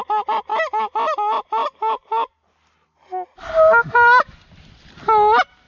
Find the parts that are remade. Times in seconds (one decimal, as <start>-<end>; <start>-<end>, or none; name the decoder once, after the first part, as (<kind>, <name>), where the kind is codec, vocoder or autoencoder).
none